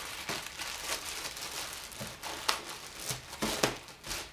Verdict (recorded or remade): recorded